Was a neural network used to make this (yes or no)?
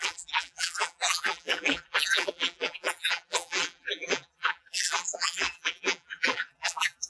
yes